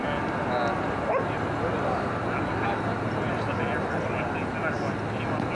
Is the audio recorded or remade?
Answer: recorded